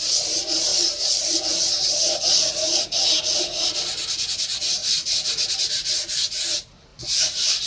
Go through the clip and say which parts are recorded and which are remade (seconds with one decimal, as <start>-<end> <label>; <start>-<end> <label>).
0.0-4.8 recorded; 4.8-5.5 remade; 5.5-7.7 recorded